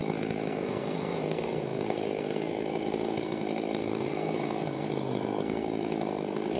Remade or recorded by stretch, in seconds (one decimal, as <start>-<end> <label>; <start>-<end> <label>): 0.0-6.6 remade